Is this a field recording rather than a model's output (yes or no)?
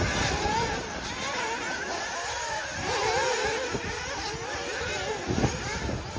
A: yes